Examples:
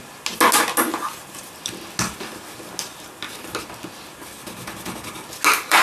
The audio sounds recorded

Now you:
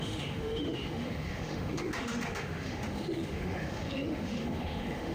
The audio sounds remade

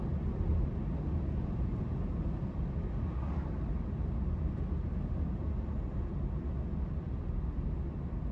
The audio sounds recorded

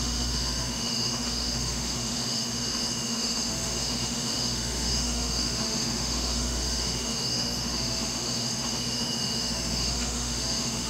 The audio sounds remade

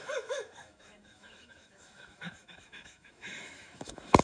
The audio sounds remade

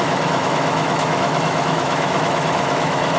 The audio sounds remade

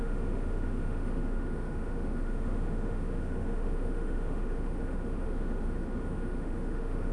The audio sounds remade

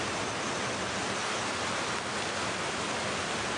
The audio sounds recorded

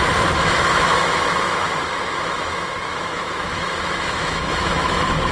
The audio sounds remade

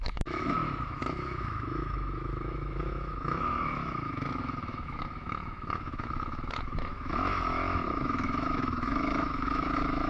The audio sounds remade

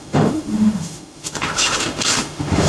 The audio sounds remade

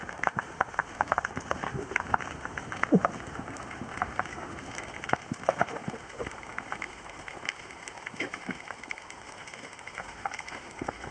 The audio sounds remade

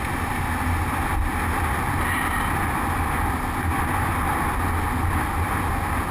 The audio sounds recorded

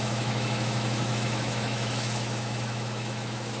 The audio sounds remade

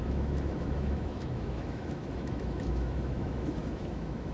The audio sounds remade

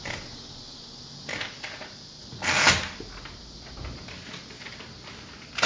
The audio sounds recorded